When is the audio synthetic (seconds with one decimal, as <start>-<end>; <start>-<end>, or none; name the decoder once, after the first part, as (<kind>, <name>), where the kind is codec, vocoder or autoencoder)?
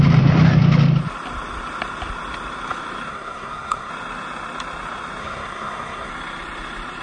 3.1-3.9 (codec, SNAC); 5.2-6.1